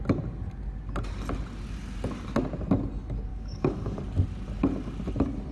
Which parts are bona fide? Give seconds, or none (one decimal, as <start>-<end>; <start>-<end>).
0.0-3.3; 4.0-5.5